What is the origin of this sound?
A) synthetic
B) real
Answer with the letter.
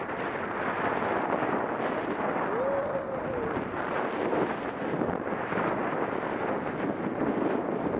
B